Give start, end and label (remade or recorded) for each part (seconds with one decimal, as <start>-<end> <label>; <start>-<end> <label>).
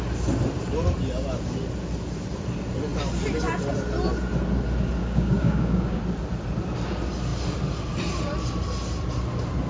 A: 0.0-5.0 recorded; 5.0-6.0 remade; 6.0-9.7 recorded